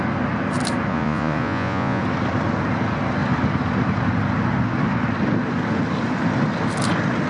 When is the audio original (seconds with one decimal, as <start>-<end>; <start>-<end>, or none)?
0.0-0.9; 2.0-7.3